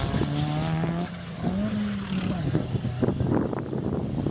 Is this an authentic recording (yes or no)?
yes